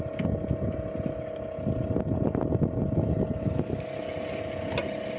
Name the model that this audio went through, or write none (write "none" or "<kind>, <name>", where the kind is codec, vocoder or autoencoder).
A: none